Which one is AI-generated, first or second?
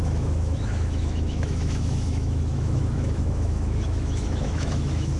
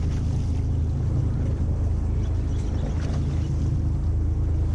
first